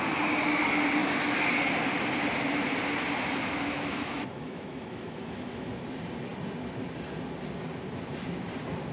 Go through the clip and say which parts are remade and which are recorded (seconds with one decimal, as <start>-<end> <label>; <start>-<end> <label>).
0.0-3.5 recorded; 3.5-5.7 remade; 5.7-8.9 recorded